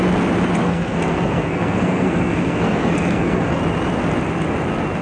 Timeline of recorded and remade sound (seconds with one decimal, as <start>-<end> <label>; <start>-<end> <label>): 0.0-0.6 recorded; 0.6-3.6 remade; 3.6-5.0 recorded